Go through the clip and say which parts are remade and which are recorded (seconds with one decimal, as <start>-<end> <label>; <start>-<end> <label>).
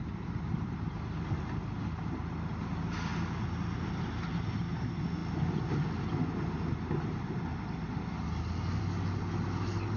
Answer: 0.0-10.0 recorded